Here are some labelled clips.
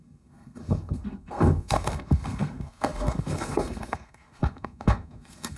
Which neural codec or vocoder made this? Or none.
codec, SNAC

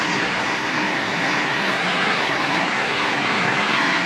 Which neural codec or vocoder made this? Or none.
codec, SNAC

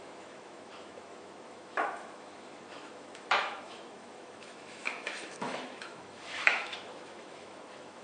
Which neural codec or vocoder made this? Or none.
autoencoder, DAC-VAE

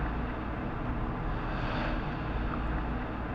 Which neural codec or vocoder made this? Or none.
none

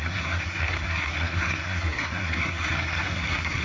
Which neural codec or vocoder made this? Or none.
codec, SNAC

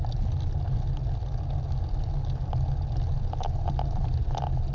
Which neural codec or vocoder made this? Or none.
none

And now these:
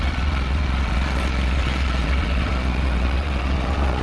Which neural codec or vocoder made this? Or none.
vocoder, Vocos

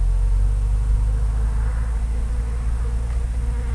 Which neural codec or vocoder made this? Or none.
none